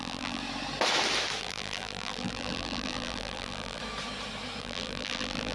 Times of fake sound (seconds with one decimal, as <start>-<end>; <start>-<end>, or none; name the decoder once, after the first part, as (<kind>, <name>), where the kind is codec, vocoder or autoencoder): 0.0-0.4 (vocoder, BigVGAN v2); 1.4-3.8; 4.6-5.5